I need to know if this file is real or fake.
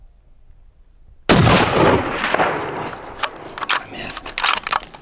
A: real